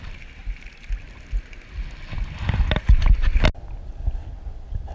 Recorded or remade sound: recorded